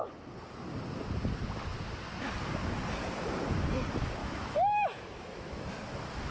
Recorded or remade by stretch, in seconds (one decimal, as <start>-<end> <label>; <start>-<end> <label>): 0.0-4.2 recorded; 4.2-5.7 remade; 5.7-6.3 recorded